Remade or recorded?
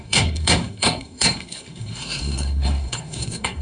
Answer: remade